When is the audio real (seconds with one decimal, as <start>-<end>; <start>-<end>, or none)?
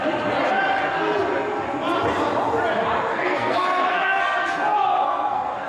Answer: 0.0-3.1